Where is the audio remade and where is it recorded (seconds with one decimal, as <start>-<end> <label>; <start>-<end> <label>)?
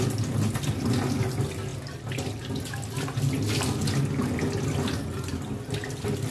0.0-6.3 recorded